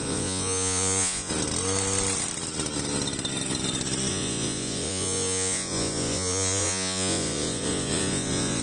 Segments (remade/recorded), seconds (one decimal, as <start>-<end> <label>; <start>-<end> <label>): 0.0-1.3 remade; 1.3-4.1 recorded; 4.1-8.6 remade